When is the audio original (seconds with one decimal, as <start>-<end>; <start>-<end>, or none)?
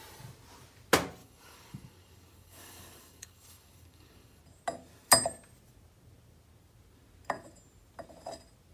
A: 0.0-1.2; 4.4-8.7